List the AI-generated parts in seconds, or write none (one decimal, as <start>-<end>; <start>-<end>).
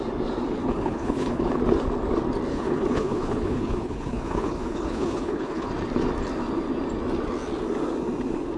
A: 0.6-1.6; 2.5-5.7